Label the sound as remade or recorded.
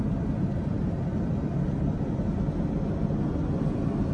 recorded